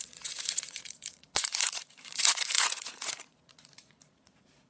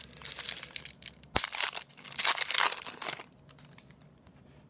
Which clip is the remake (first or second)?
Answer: first